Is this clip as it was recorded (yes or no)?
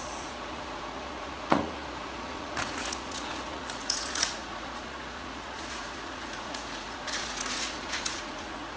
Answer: no